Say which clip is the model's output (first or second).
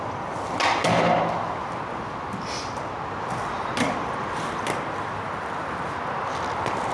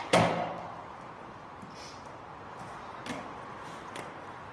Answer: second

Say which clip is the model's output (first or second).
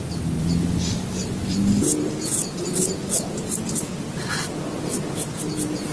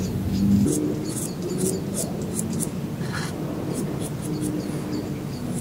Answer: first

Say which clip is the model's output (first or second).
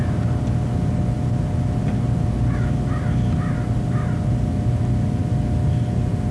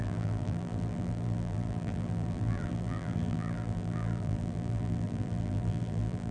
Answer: second